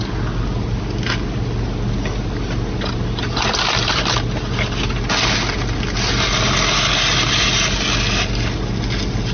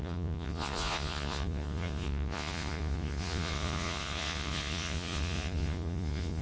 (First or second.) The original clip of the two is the first